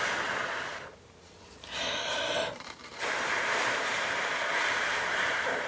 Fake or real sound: fake